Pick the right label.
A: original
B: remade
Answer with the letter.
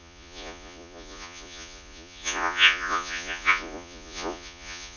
B